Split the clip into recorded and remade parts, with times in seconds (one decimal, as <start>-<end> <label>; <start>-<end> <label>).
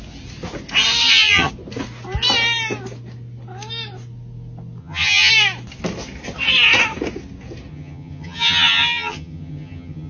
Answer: 0.0-1.0 recorded; 1.0-1.5 remade; 1.5-4.8 recorded; 4.8-5.3 remade; 5.3-7.7 recorded; 7.7-10.1 remade